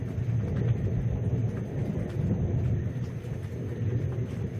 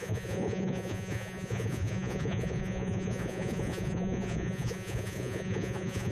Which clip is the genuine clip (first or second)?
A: first